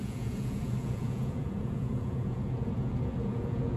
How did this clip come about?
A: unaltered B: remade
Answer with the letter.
B